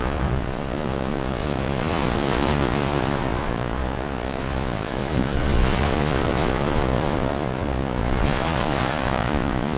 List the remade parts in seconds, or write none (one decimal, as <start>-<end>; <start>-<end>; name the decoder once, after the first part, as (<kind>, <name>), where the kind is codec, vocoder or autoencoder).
0.0-9.8 (vocoder, Vocos)